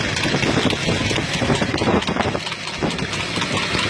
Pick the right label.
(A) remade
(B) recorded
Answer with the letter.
B